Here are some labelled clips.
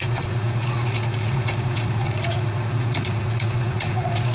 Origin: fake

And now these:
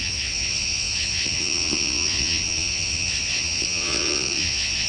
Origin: fake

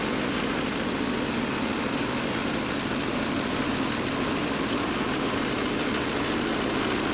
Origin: real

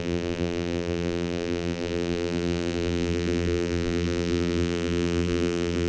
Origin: fake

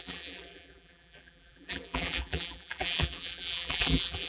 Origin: fake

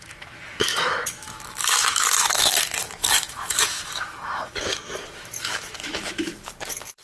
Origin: fake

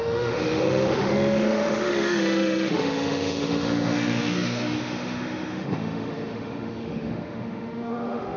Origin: fake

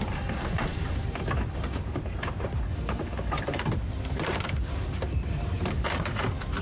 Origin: fake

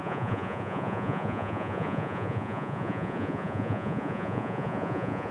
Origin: fake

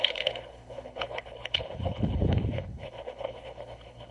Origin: fake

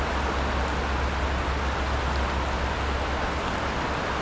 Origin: real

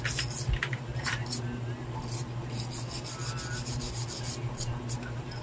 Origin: real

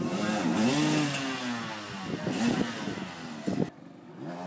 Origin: real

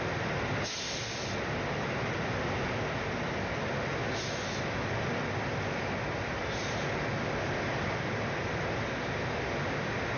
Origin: real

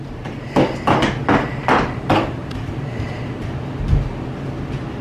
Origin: real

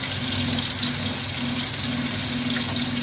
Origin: real